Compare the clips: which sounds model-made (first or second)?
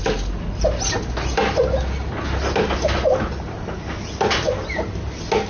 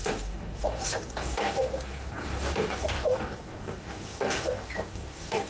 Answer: second